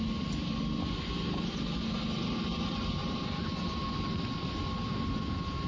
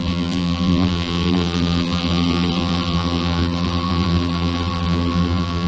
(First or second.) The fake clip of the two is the second